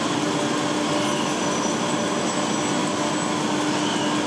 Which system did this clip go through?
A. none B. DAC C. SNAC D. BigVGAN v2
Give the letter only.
A